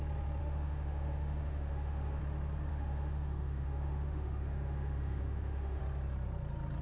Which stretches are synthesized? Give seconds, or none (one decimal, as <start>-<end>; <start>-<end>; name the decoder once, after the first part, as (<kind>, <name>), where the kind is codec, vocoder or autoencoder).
0.4-2.2 (autoencoder, DAC-VAE); 2.7-5.8